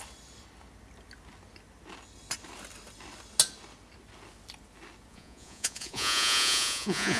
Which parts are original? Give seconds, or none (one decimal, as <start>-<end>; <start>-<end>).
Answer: 0.0-5.1